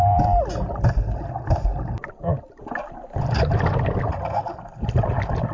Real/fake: real